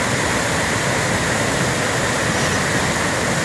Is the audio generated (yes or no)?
no